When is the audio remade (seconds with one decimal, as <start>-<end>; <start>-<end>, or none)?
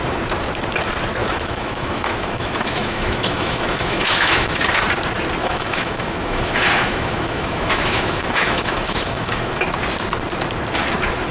1.2-4.6; 5.4-9.6